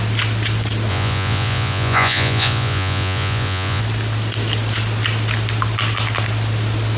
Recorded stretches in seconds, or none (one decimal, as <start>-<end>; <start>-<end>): 0.0-0.9; 3.8-7.0